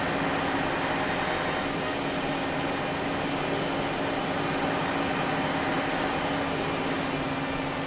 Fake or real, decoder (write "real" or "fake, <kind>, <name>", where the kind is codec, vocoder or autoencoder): real